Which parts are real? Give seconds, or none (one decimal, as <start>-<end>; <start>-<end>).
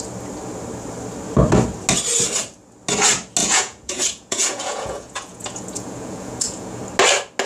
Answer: 0.0-3.4; 6.8-7.5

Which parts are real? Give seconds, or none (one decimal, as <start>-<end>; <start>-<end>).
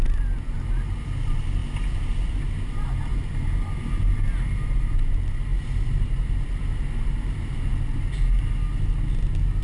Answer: 0.0-1.6; 2.4-5.5; 7.6-9.6